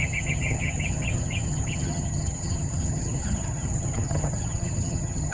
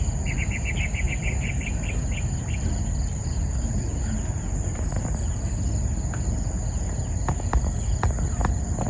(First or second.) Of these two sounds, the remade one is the first